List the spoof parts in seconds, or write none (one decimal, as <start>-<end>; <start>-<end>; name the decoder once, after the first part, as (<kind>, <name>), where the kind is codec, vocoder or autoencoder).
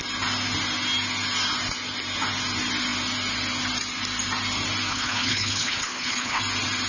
4.9-6.4 (codec, HILCodec)